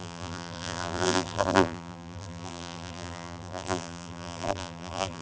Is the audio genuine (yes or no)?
no